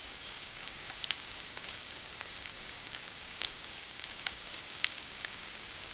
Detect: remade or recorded remade